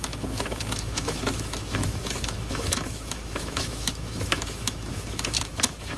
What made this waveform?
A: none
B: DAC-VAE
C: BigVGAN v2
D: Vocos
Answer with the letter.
B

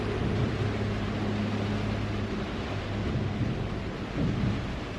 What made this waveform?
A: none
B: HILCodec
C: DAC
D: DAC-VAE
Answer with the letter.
A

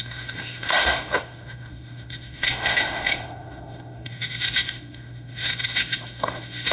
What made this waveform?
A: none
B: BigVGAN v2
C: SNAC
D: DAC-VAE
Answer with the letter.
D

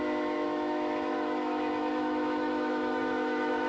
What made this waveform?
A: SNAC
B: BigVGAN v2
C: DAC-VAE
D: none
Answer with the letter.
C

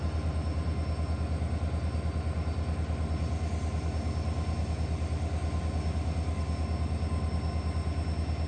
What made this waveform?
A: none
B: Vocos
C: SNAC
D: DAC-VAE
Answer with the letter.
A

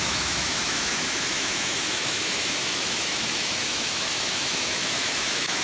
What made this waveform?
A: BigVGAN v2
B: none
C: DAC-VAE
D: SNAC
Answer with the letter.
C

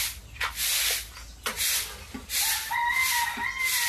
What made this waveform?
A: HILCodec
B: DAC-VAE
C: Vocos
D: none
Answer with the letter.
D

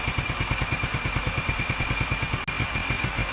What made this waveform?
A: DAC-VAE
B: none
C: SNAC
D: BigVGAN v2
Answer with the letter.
B